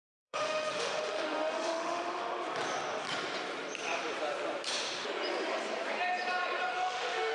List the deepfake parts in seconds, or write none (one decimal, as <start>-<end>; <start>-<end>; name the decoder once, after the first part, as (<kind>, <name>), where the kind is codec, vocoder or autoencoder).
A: 0.0-2.3 (autoencoder, DAC-VAE); 6.7-7.3